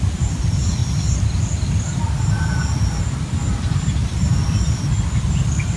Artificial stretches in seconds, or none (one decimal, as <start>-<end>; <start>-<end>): 0.8-2.0; 4.0-4.9